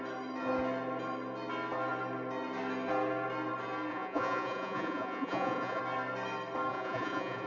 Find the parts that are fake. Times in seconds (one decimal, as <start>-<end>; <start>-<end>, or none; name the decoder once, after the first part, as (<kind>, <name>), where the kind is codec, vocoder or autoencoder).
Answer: 3.9-5.8 (vocoder, Vocos); 6.7-7.5